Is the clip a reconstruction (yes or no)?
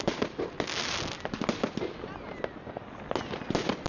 no